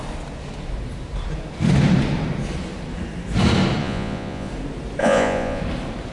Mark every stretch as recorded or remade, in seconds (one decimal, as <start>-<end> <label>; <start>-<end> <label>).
0.0-3.8 recorded; 3.8-4.5 remade; 4.5-5.0 recorded; 5.0-5.6 remade; 5.6-6.1 recorded